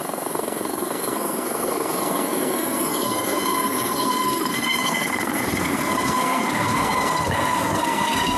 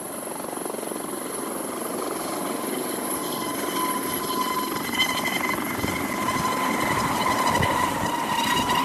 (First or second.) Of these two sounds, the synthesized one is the first